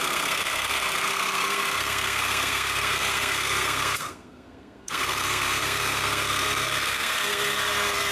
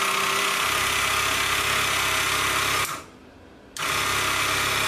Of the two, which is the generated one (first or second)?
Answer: first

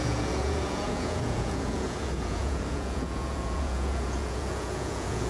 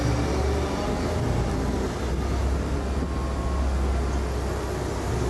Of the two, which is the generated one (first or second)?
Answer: first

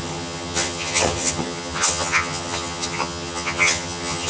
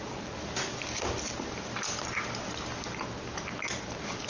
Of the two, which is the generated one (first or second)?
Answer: first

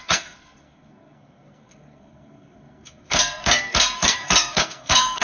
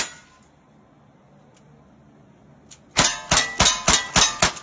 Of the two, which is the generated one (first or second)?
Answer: first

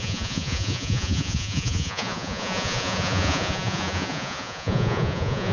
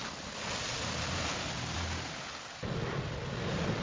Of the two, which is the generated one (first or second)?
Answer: first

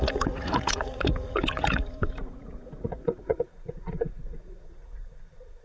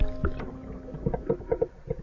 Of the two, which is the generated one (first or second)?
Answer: first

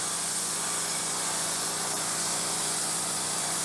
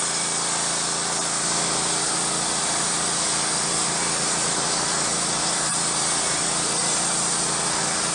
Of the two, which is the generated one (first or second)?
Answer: first